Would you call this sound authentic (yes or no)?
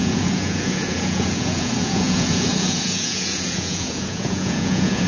no